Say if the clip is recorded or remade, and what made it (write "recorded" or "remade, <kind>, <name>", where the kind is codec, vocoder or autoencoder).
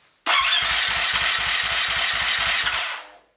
recorded